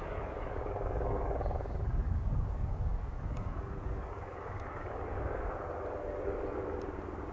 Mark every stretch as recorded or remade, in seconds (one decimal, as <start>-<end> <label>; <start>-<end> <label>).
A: 0.0-5.5 remade; 5.5-7.3 recorded